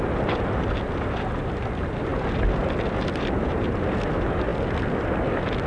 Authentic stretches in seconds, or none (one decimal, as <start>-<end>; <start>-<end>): 0.0-5.7